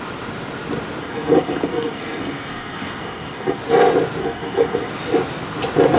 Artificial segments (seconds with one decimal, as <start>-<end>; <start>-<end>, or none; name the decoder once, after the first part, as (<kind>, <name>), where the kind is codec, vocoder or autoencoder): 1.0-3.6 (codec, SNAC); 4.2-4.9